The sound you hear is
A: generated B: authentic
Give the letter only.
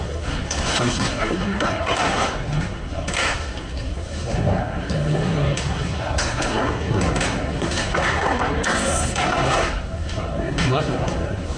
A